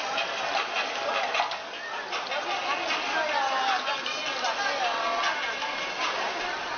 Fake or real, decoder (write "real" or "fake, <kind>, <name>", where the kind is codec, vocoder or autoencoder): real